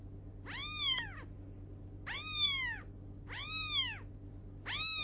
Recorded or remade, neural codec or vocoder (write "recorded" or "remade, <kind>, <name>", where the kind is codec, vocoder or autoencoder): recorded